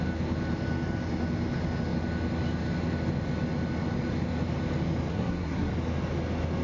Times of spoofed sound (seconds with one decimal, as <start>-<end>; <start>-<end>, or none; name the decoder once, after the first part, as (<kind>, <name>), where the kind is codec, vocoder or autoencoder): 5.1-5.7 (codec, SNAC)